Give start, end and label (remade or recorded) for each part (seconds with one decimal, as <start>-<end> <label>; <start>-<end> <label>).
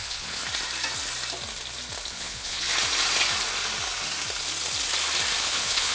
0.0-0.4 remade; 0.4-2.1 recorded; 2.1-2.7 remade; 2.7-5.4 recorded; 5.4-5.9 remade